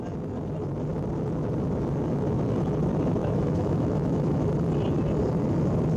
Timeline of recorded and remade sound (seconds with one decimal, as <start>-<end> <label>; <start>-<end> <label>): 0.0-3.2 recorded; 3.2-4.5 remade; 4.5-6.0 recorded